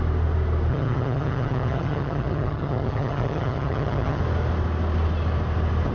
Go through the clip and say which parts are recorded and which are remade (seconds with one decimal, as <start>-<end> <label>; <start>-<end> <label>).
0.0-0.7 recorded; 0.7-4.2 remade; 4.2-5.9 recorded